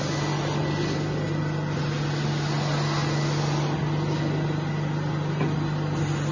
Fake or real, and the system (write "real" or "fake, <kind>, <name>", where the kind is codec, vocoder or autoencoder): real